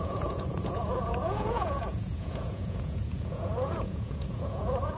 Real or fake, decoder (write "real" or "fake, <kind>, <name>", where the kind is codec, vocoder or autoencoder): fake, vocoder, Vocos